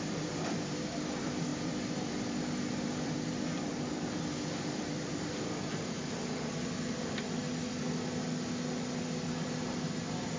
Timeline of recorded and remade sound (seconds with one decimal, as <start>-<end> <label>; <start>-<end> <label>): 0.0-7.4 remade; 7.4-10.4 recorded